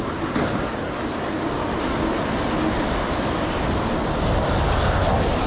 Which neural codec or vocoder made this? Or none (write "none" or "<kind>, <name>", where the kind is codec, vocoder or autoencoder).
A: none